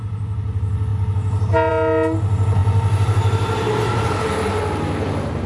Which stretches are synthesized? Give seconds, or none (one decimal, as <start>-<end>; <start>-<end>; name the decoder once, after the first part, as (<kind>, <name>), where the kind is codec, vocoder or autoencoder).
none